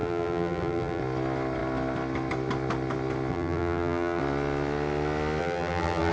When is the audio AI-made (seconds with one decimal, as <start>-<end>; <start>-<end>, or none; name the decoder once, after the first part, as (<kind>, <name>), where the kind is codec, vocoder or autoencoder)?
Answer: 0.0-1.0 (vocoder, BigVGAN v2); 3.3-4.2; 5.4-6.1